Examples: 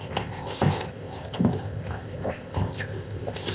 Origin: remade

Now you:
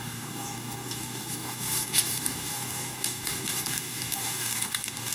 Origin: remade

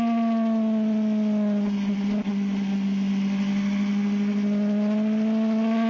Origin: recorded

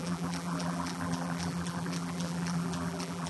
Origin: remade